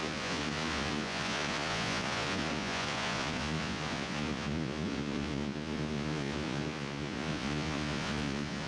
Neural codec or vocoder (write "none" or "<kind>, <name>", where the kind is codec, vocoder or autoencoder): vocoder, Vocos